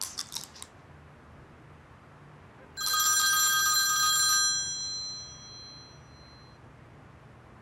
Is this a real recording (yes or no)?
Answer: yes